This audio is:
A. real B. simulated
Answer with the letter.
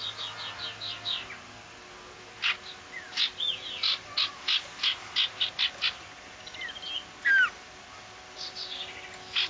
A